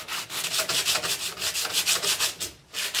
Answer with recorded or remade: recorded